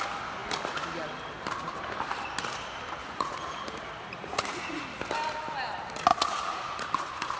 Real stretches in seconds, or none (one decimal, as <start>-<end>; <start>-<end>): 0.0-3.0; 3.6-4.2; 4.8-6.1